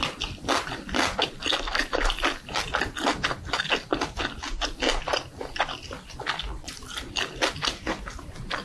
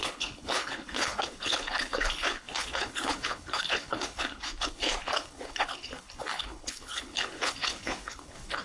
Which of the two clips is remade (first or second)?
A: second